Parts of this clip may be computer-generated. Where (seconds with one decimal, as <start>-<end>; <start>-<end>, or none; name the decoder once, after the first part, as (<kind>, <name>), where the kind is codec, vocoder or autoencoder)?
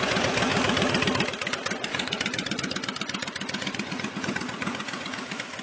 0.0-0.5 (vocoder, Vocos); 1.5-5.6